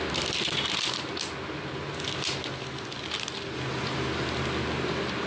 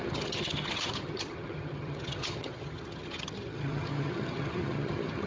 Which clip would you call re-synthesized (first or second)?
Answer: second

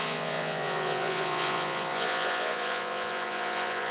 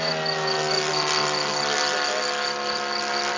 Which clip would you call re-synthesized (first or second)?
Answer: first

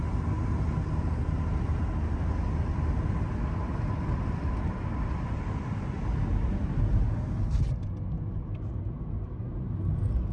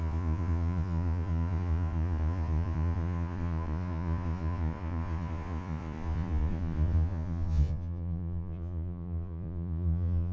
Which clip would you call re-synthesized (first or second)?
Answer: second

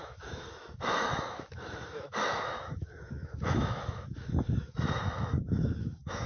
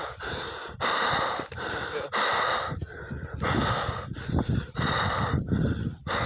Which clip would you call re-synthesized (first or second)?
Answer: first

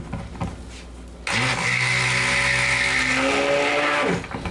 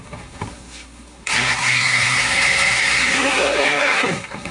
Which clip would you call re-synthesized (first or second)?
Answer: second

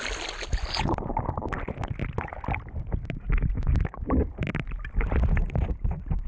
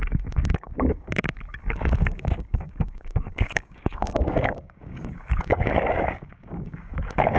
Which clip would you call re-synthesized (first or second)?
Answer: second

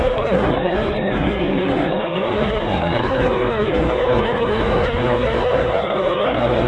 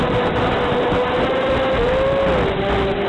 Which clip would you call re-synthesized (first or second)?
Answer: first